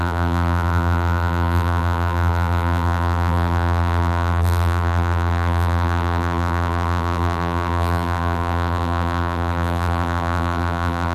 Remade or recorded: remade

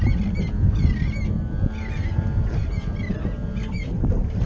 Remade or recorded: recorded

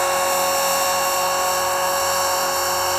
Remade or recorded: recorded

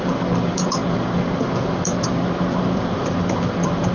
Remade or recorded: recorded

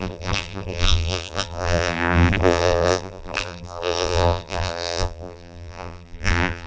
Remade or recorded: remade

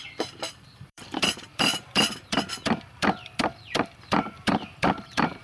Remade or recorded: remade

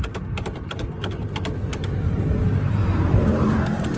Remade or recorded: remade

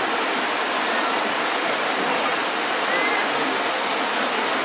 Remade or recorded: recorded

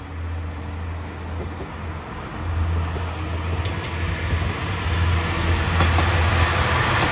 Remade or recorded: recorded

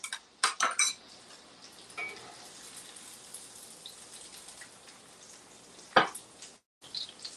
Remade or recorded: recorded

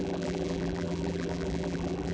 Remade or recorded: remade